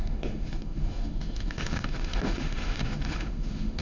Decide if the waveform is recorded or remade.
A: remade